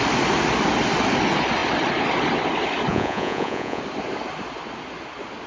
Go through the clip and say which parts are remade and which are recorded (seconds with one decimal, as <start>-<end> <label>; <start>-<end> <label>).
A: 0.0-2.9 recorded; 2.9-3.8 remade; 3.8-5.5 recorded